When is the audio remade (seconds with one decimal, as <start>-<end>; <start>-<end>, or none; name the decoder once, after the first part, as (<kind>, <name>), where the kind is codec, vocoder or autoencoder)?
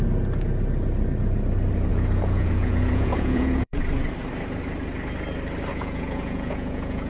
1.9-3.8 (vocoder, Vocos); 5.7-7.1